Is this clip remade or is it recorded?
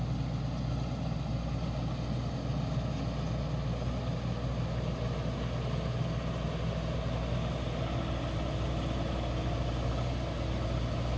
recorded